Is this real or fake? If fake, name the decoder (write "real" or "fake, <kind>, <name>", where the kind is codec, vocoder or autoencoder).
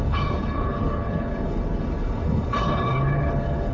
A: fake, codec, HILCodec